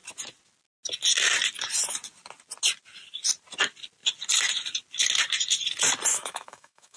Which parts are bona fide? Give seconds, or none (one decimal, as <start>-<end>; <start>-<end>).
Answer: 0.0-6.1